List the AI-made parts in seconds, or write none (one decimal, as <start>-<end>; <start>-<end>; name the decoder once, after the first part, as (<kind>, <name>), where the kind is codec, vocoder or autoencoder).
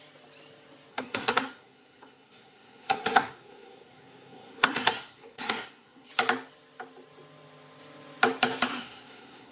0.9-6.1 (codec, SNAC); 8.7-9.5